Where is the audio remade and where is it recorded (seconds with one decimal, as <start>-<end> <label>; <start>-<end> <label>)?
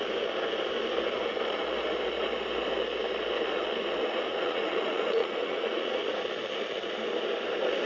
0.0-4.3 recorded; 4.3-6.0 remade; 6.0-7.9 recorded